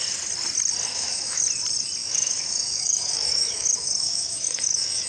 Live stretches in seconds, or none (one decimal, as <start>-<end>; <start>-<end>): 0.0-0.9; 1.4-2.0